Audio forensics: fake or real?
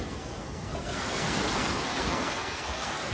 fake